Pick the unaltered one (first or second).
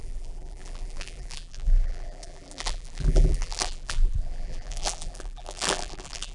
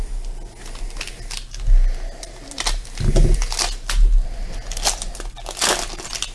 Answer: second